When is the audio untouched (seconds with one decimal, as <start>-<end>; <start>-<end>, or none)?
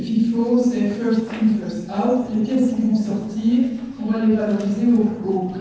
0.0-0.4; 1.2-2.9; 4.4-5.6